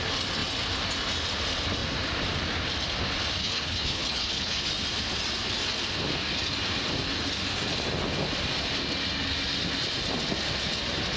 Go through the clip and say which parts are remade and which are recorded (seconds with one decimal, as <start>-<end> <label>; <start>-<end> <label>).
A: 0.0-3.4 recorded; 3.4-4.7 remade; 4.7-11.2 recorded